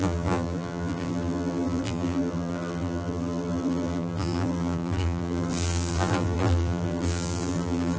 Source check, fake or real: fake